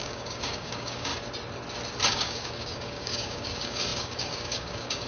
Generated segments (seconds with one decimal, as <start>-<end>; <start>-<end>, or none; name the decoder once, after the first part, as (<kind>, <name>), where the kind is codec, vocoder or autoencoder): 0.0-1.1 (codec, DAC); 2.1-5.1